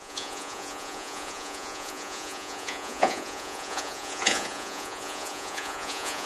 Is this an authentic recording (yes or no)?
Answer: no